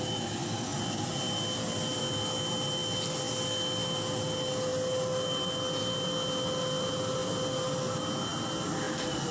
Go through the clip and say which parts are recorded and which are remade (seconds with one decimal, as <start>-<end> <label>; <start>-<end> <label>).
0.0-9.3 recorded